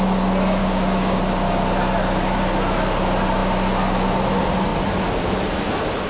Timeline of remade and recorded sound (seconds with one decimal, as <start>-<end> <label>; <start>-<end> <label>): 0.0-0.6 recorded; 0.6-1.2 remade; 1.2-6.1 recorded